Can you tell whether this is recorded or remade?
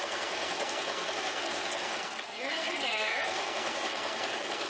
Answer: remade